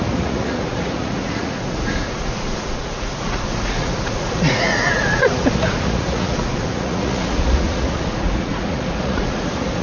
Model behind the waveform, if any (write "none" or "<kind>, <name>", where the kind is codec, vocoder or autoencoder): vocoder, Vocos